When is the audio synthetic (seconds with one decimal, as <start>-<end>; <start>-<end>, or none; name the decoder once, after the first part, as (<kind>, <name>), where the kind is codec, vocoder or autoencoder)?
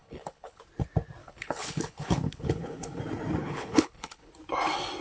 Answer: 0.0-0.6 (codec, HILCodec); 1.2-3.0; 3.4-4.3